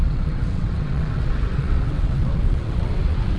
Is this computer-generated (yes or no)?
yes